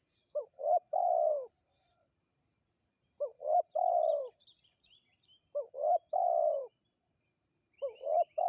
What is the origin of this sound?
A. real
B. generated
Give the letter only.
B